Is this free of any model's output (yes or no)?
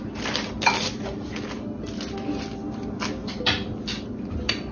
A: yes